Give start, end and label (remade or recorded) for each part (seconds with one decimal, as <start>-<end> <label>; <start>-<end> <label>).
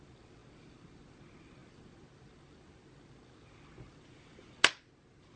0.0-5.4 recorded